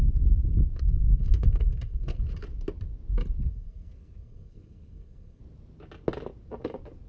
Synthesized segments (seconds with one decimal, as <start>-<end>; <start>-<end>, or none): 0.8-2.2; 3.5-5.4